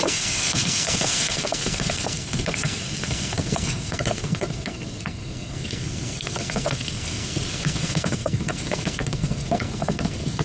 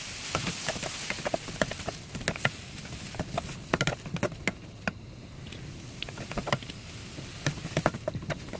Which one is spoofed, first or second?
first